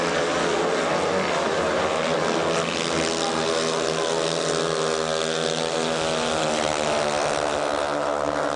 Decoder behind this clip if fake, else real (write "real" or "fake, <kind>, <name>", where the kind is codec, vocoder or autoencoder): real